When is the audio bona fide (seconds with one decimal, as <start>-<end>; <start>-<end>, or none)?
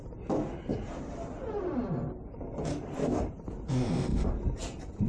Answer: 0.0-0.7; 2.9-4.1